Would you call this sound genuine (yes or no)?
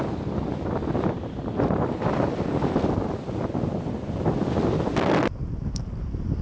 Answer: yes